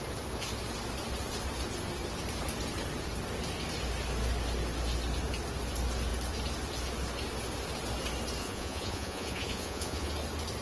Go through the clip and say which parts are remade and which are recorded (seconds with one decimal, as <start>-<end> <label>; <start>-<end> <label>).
0.0-8.4 recorded; 8.4-10.1 remade; 10.1-10.6 recorded

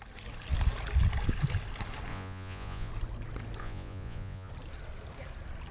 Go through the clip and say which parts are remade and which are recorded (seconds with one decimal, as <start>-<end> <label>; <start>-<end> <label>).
0.0-2.1 recorded; 2.1-2.9 remade; 2.9-3.6 recorded; 3.6-4.5 remade; 4.5-5.7 recorded

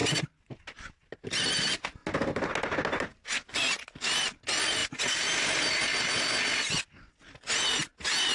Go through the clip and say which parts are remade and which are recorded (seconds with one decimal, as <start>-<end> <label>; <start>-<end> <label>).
0.0-8.3 recorded

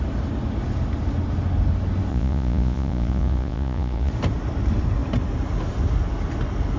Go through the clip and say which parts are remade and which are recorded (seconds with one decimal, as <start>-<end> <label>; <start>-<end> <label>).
0.0-2.1 recorded; 2.1-4.1 remade; 4.1-6.8 recorded

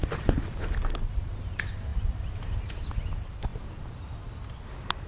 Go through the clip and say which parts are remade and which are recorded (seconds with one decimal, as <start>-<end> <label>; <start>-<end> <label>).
0.0-5.1 recorded

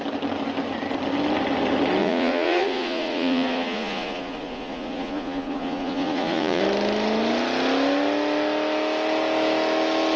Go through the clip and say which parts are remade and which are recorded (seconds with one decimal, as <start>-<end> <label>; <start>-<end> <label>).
0.0-2.0 recorded; 2.0-6.6 remade; 6.6-10.2 recorded

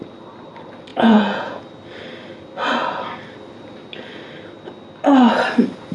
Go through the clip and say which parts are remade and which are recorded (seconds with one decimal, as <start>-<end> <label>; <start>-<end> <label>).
0.0-0.9 recorded; 0.9-1.6 remade; 1.6-5.9 recorded

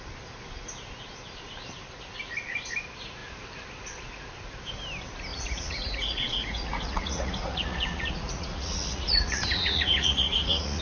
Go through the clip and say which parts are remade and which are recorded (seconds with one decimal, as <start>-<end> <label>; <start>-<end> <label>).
0.0-5.3 recorded; 5.3-10.8 remade